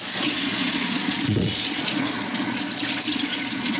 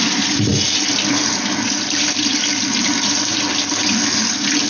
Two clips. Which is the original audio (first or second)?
second